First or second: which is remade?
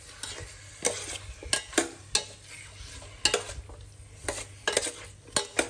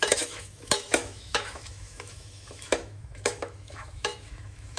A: second